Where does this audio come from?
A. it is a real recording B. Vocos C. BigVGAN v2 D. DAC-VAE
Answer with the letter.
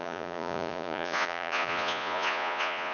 B